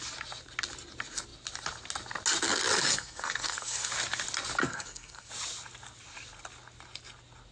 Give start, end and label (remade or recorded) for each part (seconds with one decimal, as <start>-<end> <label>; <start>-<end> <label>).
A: 0.0-2.9 recorded; 2.9-3.9 remade; 3.9-4.6 recorded; 4.6-5.3 remade; 5.3-7.5 recorded